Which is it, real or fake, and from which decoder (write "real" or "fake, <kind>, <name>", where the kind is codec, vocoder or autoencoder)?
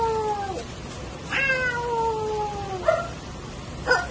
real